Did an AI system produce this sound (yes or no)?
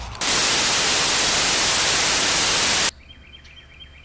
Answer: no